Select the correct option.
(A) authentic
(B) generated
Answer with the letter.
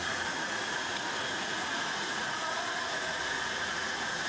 B